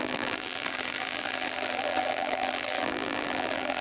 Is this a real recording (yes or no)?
no